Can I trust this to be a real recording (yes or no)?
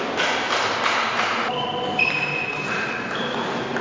yes